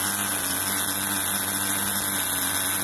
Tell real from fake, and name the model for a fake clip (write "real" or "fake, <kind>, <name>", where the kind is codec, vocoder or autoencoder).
real